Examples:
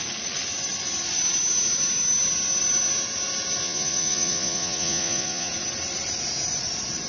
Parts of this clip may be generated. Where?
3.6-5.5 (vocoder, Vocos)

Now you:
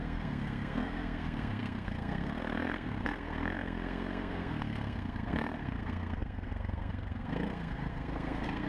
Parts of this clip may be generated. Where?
0.0-8.7 (codec, SNAC)

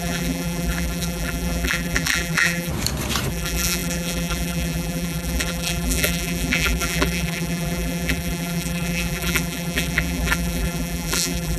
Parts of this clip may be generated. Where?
0.0-2.7 (vocoder, BigVGAN v2); 3.3-11.6

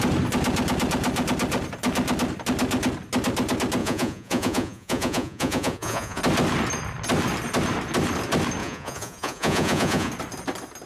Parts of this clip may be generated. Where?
3.8-6.2 (vocoder, Vocos); 8.6-10.1

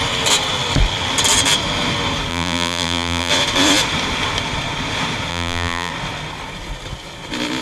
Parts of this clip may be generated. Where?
2.3-3.3 (vocoder, BigVGAN v2); 5.3-5.9